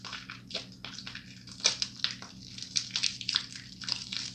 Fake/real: real